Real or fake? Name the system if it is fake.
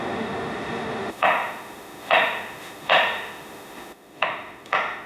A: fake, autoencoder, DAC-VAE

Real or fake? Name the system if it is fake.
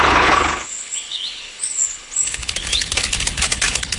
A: fake, codec, HILCodec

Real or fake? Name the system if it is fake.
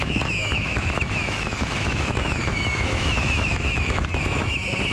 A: fake, autoencoder, DAC-VAE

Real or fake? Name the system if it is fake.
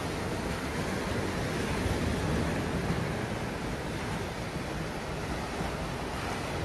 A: real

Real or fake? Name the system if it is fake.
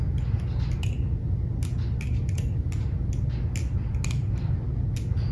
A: real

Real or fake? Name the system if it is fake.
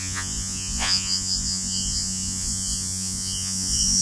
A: fake, vocoder, Vocos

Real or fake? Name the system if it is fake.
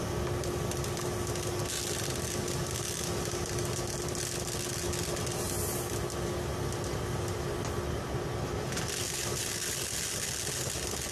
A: real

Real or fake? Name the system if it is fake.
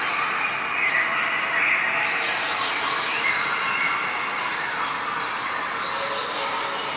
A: real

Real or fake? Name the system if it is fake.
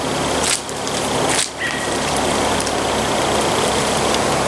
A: real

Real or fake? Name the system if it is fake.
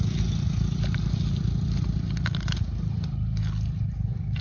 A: real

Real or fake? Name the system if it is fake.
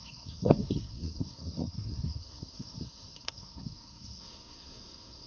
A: fake, codec, SNAC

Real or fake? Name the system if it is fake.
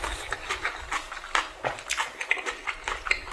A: real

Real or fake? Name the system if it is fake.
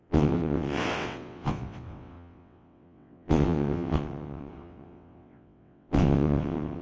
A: fake, vocoder, WaveNeXt